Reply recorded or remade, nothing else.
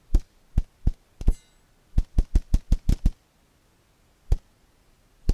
recorded